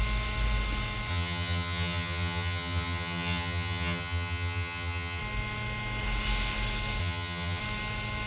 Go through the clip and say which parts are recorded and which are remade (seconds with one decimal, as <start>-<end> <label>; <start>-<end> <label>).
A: 0.0-1.1 recorded; 1.1-5.2 remade; 5.2-7.0 recorded; 7.0-7.6 remade; 7.6-8.3 recorded